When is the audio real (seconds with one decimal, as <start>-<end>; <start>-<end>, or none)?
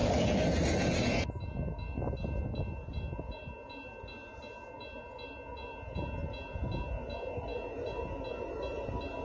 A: 0.0-9.2